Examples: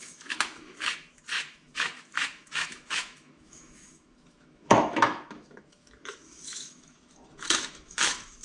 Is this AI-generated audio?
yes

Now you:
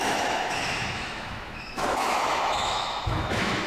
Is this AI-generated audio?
yes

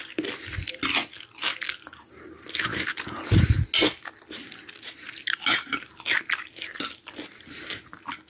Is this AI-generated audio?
no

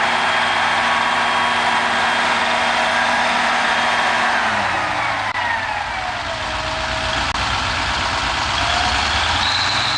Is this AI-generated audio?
no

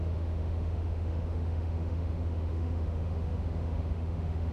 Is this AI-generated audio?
yes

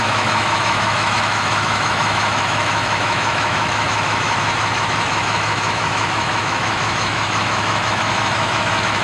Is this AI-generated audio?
yes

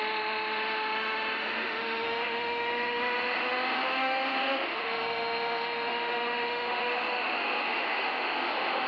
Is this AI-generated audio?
yes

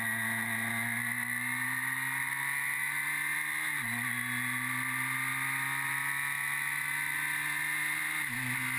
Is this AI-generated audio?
no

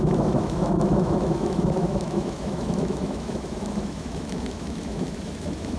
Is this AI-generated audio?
yes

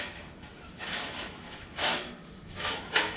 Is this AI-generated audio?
yes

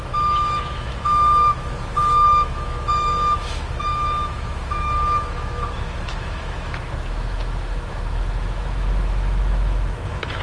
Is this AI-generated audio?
yes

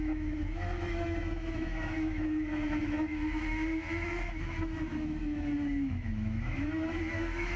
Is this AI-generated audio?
yes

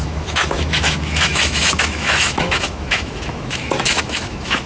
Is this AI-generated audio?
yes